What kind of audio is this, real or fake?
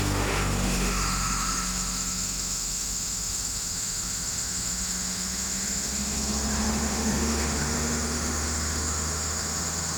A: fake